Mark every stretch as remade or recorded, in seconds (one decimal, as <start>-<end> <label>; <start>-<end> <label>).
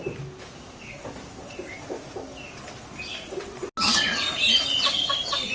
0.0-5.5 recorded